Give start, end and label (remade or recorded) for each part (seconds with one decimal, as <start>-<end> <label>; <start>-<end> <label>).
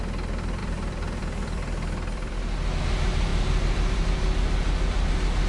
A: 0.0-0.6 recorded; 0.6-2.8 remade; 2.8-3.3 recorded; 3.3-5.1 remade; 5.1-5.5 recorded